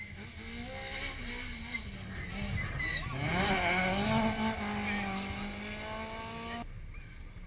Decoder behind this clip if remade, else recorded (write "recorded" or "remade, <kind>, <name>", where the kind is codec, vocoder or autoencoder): recorded